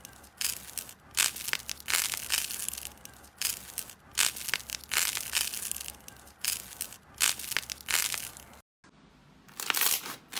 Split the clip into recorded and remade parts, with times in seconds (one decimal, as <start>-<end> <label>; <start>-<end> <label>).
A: 0.0-10.4 recorded